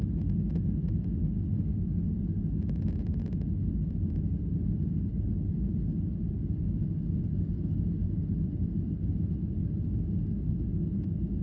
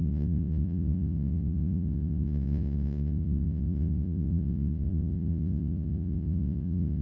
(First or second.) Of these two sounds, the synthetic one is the second